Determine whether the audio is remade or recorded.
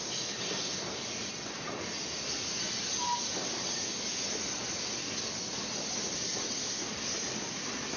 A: recorded